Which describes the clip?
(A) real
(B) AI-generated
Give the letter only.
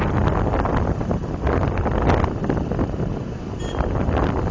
A